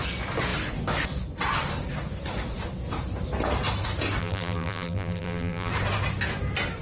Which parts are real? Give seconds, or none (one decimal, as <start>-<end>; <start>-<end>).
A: 0.0-4.2; 5.7-6.8